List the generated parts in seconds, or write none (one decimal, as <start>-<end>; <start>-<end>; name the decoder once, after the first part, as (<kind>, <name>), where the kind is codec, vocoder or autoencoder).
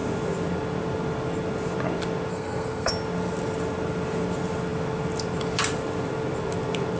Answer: 2.3-2.9 (codec, SNAC)